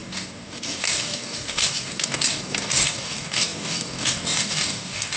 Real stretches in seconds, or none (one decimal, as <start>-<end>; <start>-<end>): none